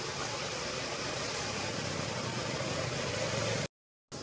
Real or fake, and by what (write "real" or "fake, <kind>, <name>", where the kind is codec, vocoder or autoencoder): real